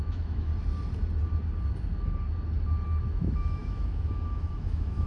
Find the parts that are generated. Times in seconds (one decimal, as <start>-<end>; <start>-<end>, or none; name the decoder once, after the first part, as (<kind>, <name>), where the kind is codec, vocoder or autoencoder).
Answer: 0.0-0.5 (autoencoder, DAC-VAE); 3.0-5.1